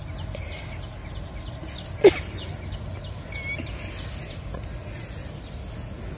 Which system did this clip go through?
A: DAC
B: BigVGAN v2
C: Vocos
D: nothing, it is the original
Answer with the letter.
D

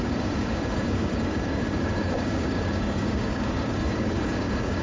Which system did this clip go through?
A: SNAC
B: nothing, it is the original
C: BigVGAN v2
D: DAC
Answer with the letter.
D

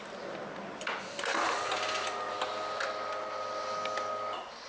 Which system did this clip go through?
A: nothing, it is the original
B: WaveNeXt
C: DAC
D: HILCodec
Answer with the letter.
A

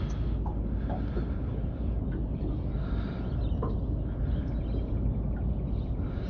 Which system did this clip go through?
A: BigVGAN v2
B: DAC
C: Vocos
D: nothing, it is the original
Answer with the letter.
D